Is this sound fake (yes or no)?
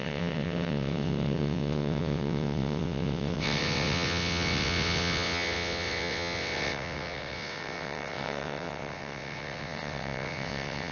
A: yes